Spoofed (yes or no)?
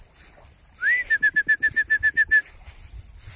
no